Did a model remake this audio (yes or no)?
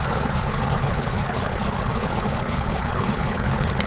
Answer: yes